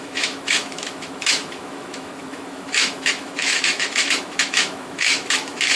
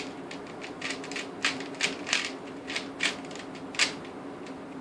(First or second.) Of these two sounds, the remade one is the first